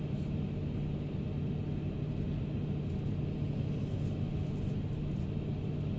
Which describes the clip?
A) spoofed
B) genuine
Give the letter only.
B